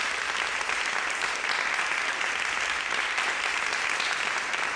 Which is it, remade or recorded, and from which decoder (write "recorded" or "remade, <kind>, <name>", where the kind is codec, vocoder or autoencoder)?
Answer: recorded